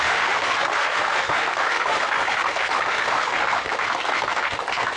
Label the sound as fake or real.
fake